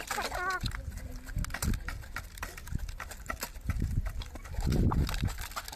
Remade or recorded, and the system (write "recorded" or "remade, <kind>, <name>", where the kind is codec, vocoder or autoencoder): recorded